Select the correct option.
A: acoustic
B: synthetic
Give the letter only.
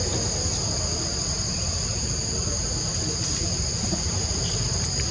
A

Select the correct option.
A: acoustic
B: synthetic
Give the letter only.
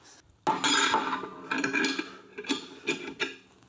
A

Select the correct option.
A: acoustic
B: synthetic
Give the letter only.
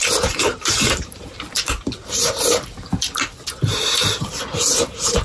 B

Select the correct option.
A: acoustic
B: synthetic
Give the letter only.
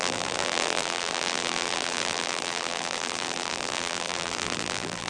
B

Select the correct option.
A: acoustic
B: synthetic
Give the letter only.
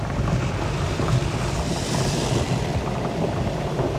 B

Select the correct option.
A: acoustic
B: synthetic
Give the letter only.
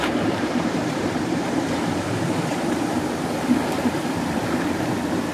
B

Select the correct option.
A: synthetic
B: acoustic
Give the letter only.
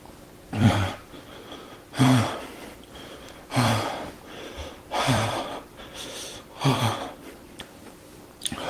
A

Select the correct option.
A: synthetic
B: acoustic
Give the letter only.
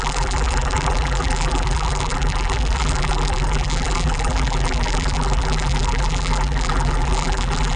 A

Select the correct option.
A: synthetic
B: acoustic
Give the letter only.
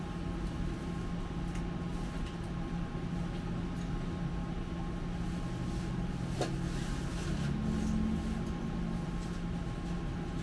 B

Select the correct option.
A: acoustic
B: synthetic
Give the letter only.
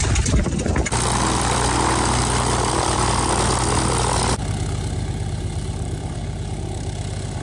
B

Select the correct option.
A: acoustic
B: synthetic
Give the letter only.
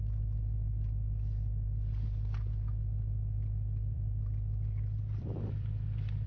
B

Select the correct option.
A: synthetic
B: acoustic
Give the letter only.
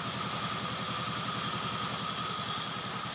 B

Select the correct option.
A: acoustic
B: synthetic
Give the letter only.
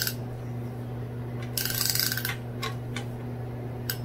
A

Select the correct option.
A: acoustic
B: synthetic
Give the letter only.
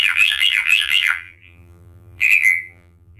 B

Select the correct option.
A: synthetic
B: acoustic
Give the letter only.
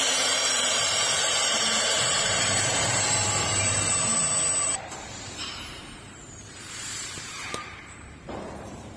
A